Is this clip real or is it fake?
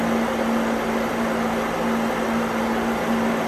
real